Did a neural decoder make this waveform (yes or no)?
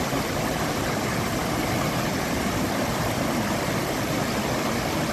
no